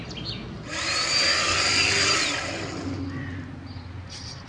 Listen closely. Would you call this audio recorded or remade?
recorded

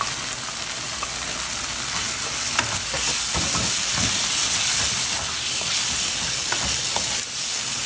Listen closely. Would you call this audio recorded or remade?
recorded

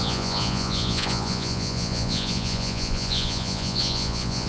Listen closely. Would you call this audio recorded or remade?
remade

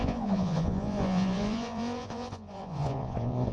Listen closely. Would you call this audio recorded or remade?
remade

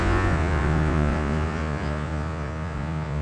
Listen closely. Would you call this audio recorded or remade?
remade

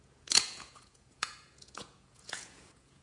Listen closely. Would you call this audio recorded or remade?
remade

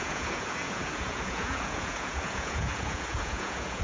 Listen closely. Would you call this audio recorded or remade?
remade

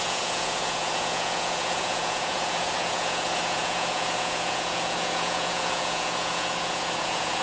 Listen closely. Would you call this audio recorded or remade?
remade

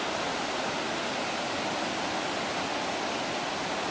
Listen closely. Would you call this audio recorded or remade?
recorded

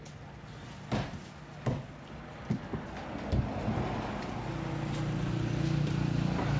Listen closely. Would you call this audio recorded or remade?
recorded